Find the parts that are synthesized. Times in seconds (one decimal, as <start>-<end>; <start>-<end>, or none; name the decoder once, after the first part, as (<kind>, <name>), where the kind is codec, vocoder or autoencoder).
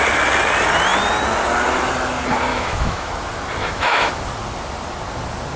2.5-3.1 (autoencoder, DAC-VAE); 3.6-4.1